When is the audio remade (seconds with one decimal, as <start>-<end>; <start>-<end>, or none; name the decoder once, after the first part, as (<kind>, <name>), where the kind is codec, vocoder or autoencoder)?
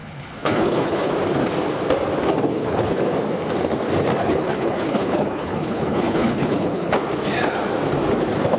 0.0-1.1 (codec, HILCodec); 2.5-3.0; 4.2-6.9